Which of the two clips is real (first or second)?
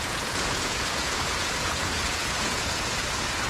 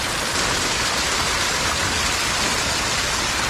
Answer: second